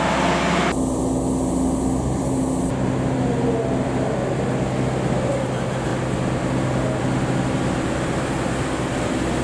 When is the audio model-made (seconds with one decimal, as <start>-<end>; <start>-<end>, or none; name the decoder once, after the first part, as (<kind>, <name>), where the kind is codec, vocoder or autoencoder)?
none